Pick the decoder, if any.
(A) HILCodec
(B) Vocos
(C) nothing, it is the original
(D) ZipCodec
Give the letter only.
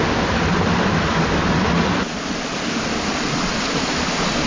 C